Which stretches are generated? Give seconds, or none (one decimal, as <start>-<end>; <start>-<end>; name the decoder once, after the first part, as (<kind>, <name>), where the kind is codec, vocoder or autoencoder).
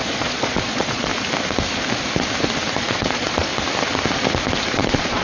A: 0.0-1.1 (vocoder, Vocos); 2.8-3.5; 4.7-5.2